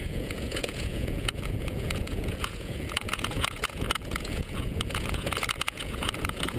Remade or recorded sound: remade